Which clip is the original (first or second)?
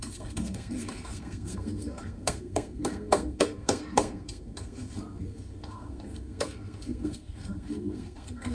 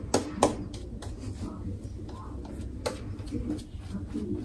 second